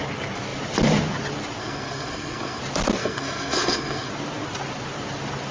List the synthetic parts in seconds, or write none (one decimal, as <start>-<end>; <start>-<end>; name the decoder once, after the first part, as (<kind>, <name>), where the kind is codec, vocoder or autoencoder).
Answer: 1.6-2.6 (codec, SNAC); 3.0-4.1